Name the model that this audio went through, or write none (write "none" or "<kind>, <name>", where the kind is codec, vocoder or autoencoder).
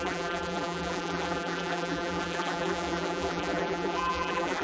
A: vocoder, BigVGAN v2